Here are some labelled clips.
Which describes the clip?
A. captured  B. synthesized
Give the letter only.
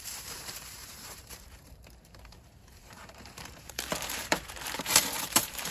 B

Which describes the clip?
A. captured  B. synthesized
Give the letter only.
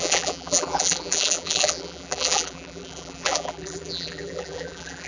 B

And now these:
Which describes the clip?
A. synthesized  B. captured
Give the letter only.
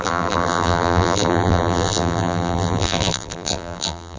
A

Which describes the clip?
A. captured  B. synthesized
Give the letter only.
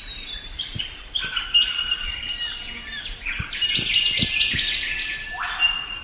A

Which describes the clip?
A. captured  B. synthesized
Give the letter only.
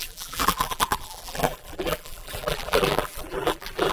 B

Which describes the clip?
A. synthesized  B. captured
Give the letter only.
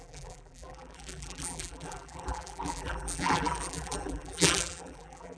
A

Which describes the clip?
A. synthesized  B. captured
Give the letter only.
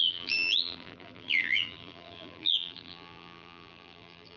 A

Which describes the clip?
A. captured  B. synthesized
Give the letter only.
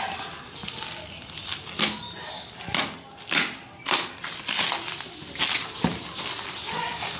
A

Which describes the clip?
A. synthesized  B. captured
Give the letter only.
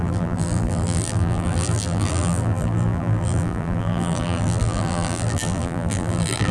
A